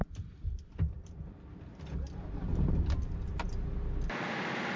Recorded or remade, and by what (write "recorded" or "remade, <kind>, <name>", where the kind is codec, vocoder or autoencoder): recorded